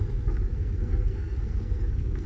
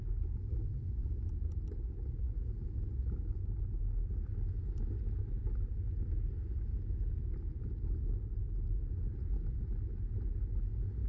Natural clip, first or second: second